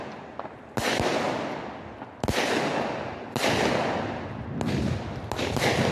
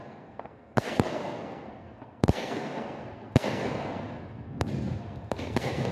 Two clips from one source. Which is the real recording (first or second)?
first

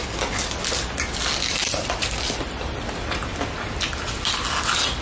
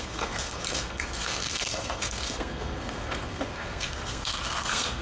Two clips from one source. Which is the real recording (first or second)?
first